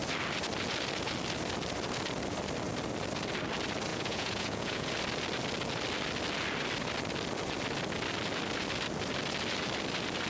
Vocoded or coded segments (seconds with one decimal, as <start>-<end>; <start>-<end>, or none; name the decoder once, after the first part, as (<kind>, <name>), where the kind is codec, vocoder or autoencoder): 3.9-4.9 (vocoder, Vocos)